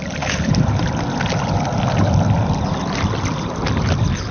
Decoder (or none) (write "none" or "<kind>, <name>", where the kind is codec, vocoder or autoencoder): none